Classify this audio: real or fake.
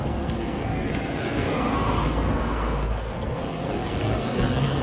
fake